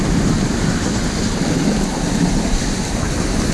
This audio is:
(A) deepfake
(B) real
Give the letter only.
B